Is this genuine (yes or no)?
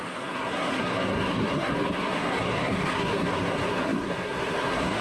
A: no